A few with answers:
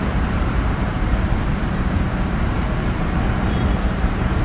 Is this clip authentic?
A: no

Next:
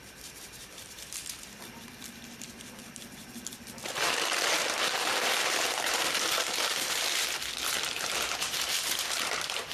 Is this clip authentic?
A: no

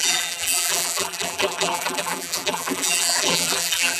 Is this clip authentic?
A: no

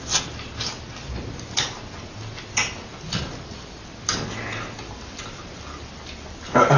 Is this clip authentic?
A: yes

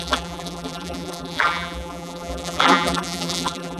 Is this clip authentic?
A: no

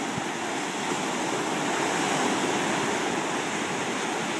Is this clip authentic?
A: yes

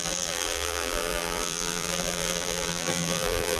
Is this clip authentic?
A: no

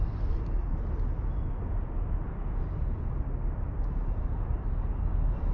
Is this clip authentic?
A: yes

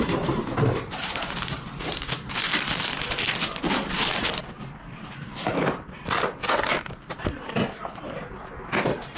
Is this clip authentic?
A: no